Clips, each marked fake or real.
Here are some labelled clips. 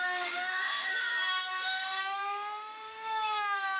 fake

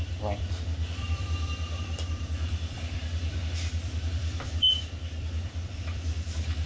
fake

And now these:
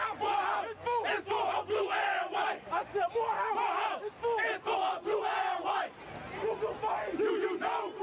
real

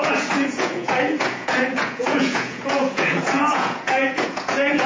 fake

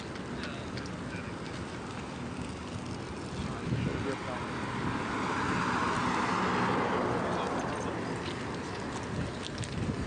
real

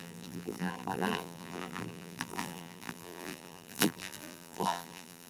fake